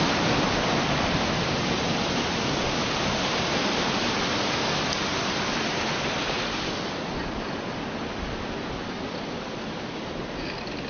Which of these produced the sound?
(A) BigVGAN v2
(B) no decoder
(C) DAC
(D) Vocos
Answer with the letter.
B